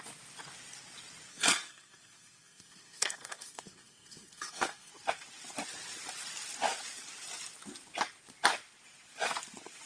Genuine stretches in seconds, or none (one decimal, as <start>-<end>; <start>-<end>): 0.0-1.3; 4.9-9.9